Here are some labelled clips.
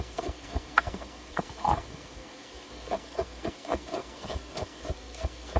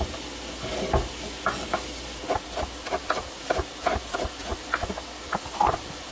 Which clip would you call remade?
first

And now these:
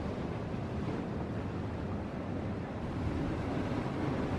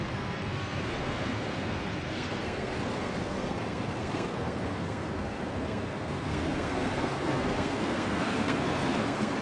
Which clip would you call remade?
second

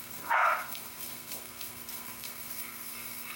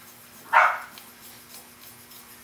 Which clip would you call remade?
first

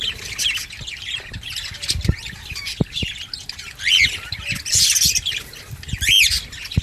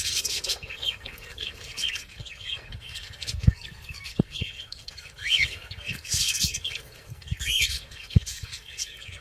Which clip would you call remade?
second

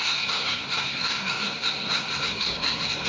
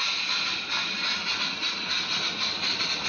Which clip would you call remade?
first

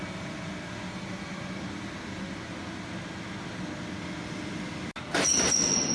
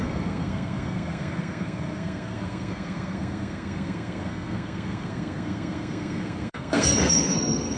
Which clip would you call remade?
second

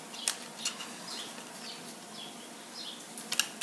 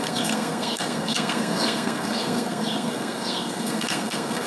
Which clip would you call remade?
second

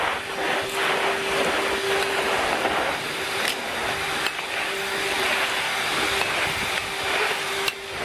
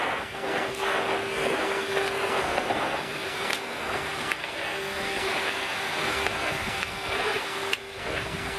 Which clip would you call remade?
second